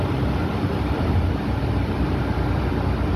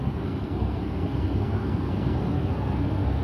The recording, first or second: first